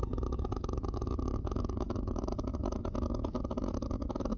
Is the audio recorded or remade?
remade